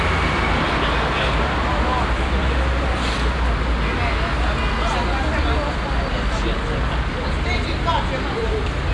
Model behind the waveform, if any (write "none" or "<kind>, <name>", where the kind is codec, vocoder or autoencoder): none